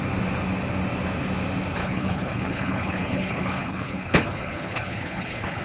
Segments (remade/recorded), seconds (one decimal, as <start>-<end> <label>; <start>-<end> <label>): 0.0-1.8 recorded; 1.8-5.6 remade